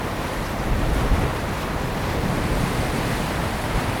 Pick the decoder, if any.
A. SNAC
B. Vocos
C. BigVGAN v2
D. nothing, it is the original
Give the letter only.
C